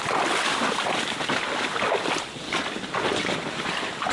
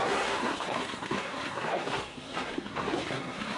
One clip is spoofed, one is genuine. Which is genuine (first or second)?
first